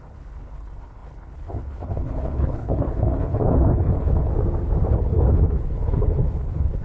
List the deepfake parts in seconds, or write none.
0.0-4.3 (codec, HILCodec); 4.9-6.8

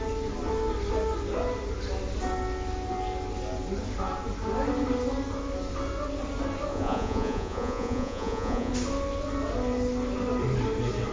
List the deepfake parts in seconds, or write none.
6.7-8.7 (vocoder, Vocos)

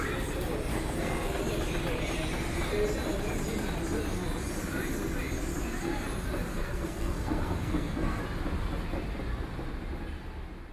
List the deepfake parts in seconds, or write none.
0.7-1.4 (codec, SNAC); 6.5-8.2

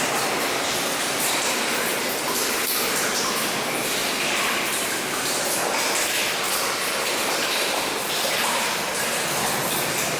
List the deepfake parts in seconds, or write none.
0.0-4.0 (vocoder, BigVGAN v2); 7.1-10.2

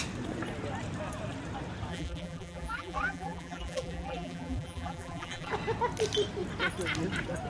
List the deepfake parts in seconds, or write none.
1.9-5.5 (vocoder, BigVGAN v2)